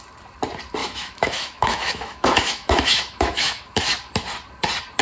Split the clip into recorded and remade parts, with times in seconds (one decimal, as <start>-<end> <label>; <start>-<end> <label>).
0.0-0.8 recorded; 0.8-3.8 remade; 3.8-5.0 recorded